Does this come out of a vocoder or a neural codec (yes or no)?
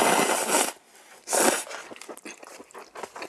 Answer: no